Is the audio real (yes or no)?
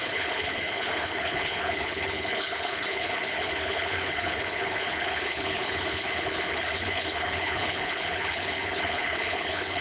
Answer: no